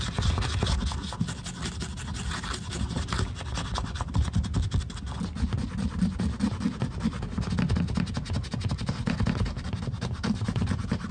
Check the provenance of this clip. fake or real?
real